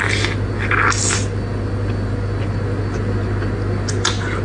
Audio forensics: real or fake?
real